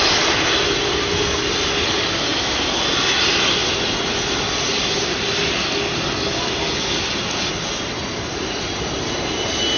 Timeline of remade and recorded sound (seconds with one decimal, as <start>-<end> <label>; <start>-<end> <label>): 0.0-9.8 recorded